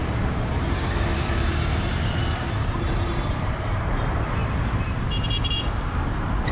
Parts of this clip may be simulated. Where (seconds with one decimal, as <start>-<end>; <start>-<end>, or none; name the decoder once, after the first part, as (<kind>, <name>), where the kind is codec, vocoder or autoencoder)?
0.0-6.5 (vocoder, BigVGAN v2)